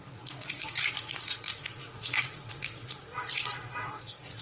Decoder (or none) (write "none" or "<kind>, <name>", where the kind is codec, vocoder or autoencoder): vocoder, Vocos